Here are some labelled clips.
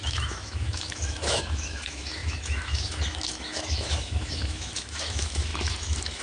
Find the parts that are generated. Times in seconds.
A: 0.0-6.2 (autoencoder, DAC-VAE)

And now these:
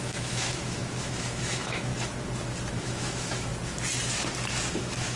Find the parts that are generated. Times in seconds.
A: 0.0-1.9 (autoencoder, DAC-VAE); 2.7-3.5; 4.7-5.2